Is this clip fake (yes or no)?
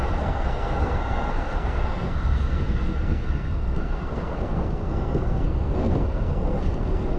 yes